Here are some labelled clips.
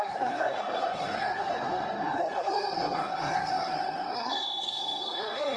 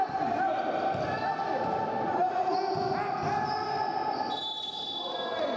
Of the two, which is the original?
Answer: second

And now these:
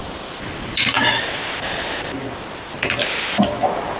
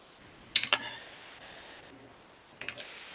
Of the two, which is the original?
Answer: second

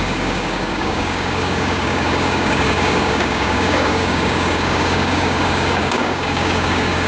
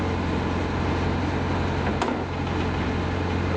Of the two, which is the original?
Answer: second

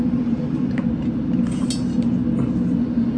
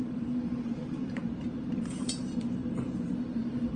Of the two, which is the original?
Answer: first